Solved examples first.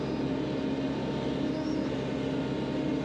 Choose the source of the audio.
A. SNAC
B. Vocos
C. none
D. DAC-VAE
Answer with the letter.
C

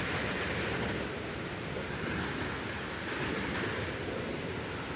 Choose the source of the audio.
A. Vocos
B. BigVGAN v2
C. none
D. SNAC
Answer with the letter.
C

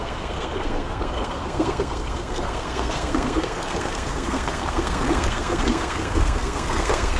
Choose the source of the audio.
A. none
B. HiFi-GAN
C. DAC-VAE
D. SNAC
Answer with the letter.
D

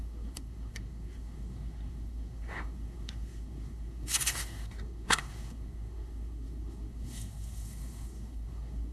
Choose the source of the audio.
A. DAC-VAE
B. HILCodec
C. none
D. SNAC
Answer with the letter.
D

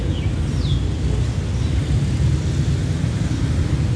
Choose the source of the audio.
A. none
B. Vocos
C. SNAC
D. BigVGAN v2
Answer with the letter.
A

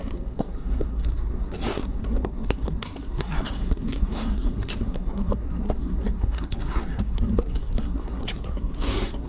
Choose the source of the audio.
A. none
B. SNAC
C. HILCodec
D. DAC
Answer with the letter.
B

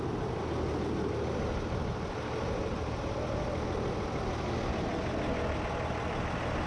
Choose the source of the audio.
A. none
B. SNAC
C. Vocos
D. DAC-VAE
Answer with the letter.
A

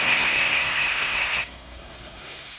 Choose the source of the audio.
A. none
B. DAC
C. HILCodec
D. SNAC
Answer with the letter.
D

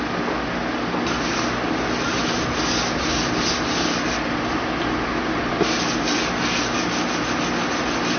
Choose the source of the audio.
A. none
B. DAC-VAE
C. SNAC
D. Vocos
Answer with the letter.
A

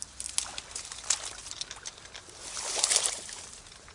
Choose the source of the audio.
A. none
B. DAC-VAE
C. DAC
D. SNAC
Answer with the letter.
A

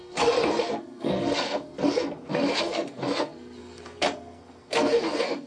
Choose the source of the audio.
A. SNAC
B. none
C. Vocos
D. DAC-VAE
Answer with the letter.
A